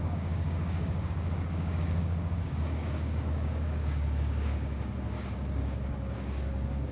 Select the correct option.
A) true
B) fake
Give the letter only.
B